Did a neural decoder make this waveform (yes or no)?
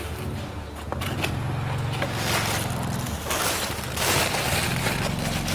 no